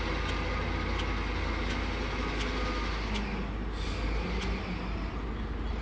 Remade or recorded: recorded